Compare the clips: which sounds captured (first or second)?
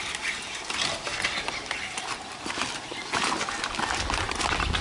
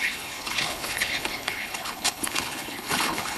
first